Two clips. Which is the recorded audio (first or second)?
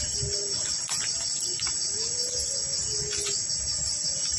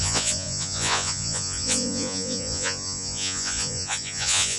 first